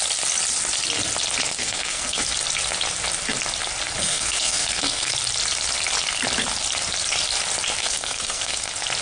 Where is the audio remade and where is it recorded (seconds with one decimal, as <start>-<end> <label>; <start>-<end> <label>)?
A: 0.0-1.6 recorded; 1.6-2.2 remade; 2.2-4.0 recorded; 4.0-5.1 remade; 5.1-7.8 recorded; 7.8-8.6 remade; 8.6-9.0 recorded